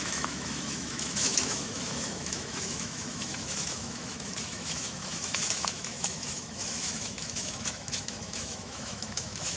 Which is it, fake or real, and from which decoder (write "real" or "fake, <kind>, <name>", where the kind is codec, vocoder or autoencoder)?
fake, autoencoder, DAC-VAE